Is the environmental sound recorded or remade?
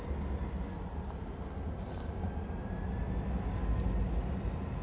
recorded